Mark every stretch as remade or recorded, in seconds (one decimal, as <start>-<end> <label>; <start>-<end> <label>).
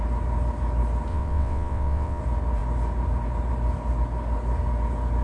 0.0-1.1 recorded; 1.1-2.2 remade; 2.2-5.2 recorded